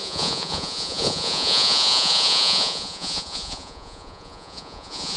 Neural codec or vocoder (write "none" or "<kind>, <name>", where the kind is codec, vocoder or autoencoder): vocoder, Vocos